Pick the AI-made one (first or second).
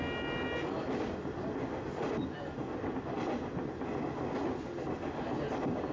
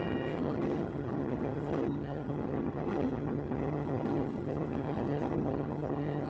second